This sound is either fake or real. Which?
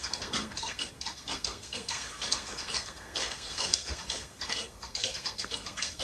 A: fake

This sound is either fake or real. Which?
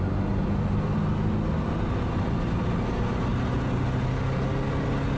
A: real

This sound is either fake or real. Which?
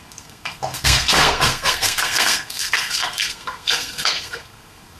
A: fake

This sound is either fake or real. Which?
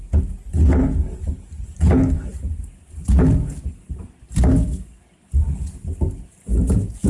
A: real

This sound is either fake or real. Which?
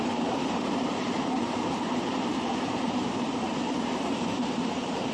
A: fake